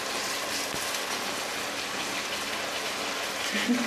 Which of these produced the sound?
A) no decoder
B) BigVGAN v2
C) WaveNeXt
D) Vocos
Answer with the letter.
A